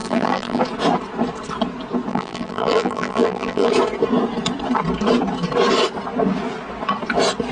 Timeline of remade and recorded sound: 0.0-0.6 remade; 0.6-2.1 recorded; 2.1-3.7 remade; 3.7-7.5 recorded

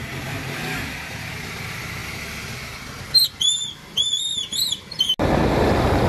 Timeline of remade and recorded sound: 0.0-6.1 recorded